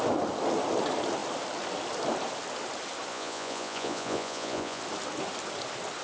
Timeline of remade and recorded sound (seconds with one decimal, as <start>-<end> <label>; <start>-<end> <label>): 0.0-3.1 recorded; 3.1-4.8 remade; 4.8-6.0 recorded